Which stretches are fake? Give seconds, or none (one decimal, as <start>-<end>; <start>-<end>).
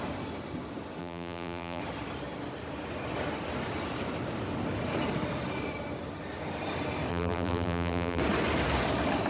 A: 1.0-1.8; 7.1-8.2